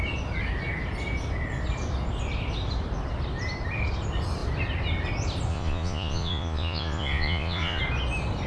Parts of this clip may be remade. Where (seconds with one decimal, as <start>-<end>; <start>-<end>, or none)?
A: 5.5-7.8